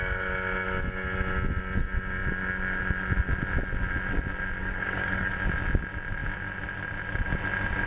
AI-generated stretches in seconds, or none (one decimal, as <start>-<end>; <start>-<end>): 4.6-5.3